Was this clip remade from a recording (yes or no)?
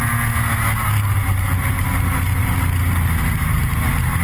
no